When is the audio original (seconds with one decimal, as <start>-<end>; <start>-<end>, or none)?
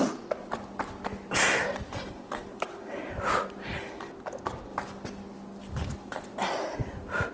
0.0-7.3